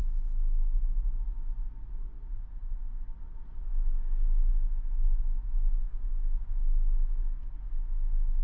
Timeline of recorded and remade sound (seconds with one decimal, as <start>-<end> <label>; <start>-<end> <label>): 0.0-8.4 recorded